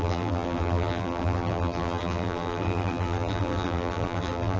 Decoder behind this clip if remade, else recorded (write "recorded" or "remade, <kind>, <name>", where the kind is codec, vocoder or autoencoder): remade, vocoder, BigVGAN v2